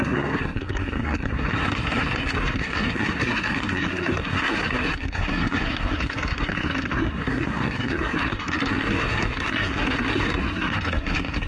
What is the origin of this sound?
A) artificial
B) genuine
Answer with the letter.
A